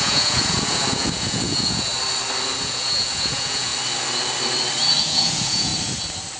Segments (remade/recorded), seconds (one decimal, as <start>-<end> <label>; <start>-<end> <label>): 0.0-1.9 remade; 1.9-2.6 recorded; 2.6-3.7 remade; 3.7-5.0 recorded; 5.0-5.7 remade; 5.7-6.4 recorded

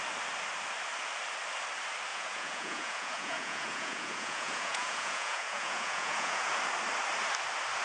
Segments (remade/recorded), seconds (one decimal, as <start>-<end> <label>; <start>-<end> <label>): 0.0-2.1 recorded; 2.1-6.5 remade; 6.5-7.8 recorded

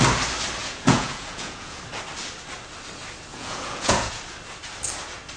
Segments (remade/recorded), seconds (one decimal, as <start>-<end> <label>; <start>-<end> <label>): 0.0-0.6 recorded; 0.6-1.8 remade; 1.8-3.3 recorded; 3.3-4.1 remade; 4.1-5.4 recorded

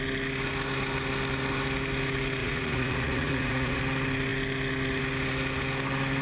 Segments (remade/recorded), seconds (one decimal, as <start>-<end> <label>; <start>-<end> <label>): 0.0-2.4 recorded; 2.4-3.8 remade; 3.8-6.2 recorded

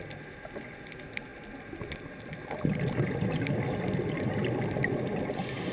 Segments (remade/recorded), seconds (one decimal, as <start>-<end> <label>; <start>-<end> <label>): 0.0-5.7 recorded

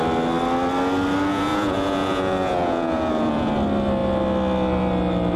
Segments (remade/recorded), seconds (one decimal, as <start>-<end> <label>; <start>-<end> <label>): 0.0-1.3 recorded; 1.3-3.5 remade; 3.5-5.4 recorded

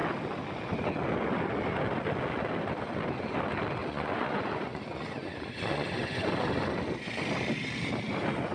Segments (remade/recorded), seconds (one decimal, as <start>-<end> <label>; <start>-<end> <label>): 0.0-3.8 recorded; 3.8-6.3 remade; 6.3-8.5 recorded

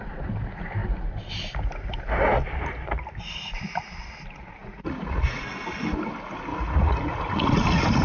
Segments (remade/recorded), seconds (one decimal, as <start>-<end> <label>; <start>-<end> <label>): 0.0-4.6 recorded; 4.6-5.4 remade; 5.4-6.5 recorded; 6.5-8.0 remade